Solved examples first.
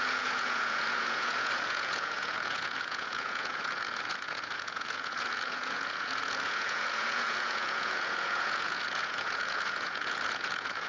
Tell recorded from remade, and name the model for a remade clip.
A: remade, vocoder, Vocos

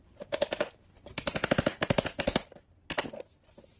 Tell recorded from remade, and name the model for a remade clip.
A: recorded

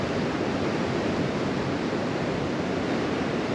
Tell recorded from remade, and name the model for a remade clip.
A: recorded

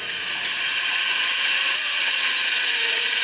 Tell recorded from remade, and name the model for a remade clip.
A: remade, vocoder, Vocos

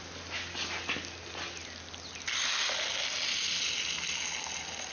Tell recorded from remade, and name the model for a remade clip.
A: recorded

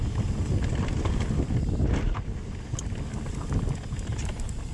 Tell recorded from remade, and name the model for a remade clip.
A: recorded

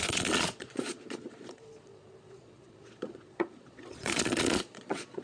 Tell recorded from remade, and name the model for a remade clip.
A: remade, vocoder, Vocos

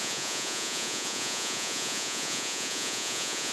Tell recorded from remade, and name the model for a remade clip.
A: remade, vocoder, Vocos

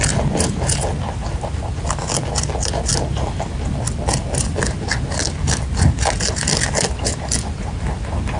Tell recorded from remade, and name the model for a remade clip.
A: recorded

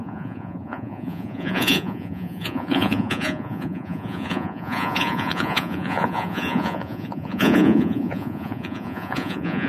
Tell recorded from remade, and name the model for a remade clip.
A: remade, vocoder, Vocos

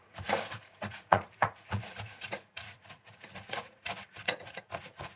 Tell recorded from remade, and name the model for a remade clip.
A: remade, vocoder, Vocos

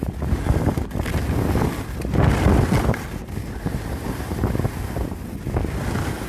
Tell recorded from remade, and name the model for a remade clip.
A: recorded